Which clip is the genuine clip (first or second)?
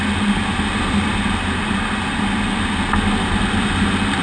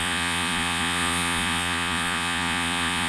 first